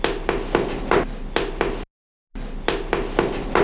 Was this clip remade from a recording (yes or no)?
no